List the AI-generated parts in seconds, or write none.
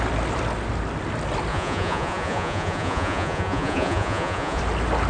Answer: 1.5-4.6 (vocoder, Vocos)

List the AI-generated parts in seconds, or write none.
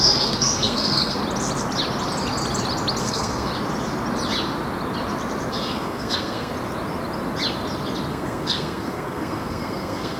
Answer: 0.0-1.2 (codec, SNAC); 3.0-3.5; 5.5-6.5; 8.1-10.2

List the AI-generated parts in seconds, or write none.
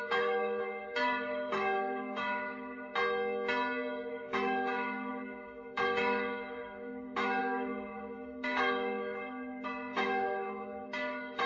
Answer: 0.0-2.9 (codec, DAC); 4.1-11.5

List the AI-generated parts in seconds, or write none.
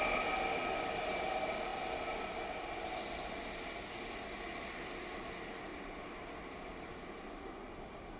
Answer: 5.7-6.9 (vocoder, BigVGAN v2)